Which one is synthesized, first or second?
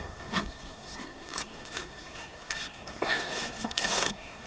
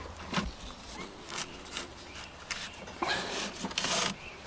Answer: first